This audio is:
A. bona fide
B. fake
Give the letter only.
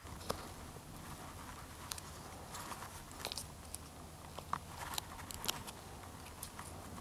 A